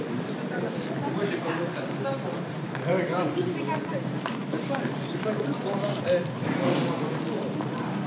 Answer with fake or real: fake